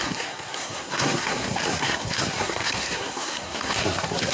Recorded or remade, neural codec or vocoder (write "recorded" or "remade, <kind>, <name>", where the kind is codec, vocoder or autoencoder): remade, codec, SNAC